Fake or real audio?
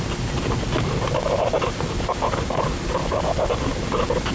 real